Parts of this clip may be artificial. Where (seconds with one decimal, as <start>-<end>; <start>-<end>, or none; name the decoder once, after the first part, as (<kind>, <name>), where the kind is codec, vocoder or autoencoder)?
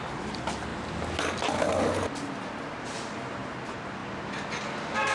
none